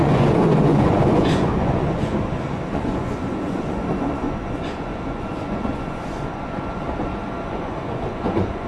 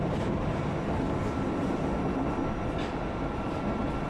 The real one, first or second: second